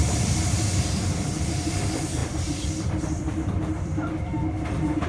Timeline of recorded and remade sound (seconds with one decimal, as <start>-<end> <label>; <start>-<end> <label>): 0.0-1.7 remade; 1.7-2.2 recorded; 2.2-4.1 remade; 4.1-5.1 recorded